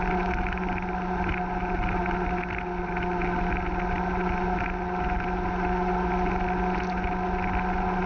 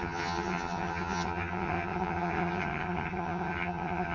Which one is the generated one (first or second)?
second